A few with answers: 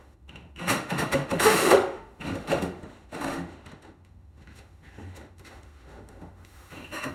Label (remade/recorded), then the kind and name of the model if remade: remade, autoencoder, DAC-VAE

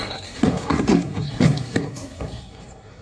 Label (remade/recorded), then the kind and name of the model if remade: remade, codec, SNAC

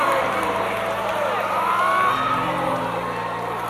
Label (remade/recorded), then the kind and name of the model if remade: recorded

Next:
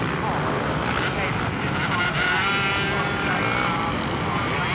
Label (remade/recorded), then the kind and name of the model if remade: recorded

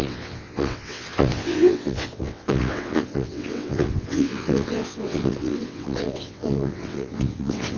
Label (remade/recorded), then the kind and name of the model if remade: remade, vocoder, WaveNeXt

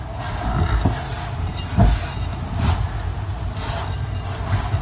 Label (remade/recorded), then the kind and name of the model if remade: recorded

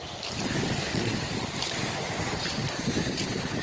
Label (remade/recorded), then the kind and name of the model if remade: recorded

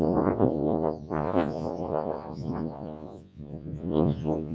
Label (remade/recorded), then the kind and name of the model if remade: remade, vocoder, Vocos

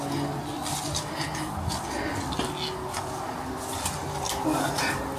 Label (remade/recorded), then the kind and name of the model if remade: recorded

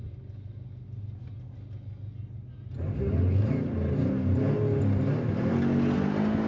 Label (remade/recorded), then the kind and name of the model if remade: recorded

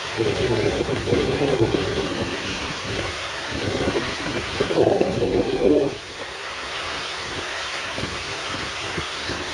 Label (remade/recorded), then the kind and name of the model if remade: remade, codec, SNAC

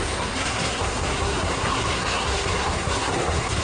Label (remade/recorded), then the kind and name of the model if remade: remade, codec, SNAC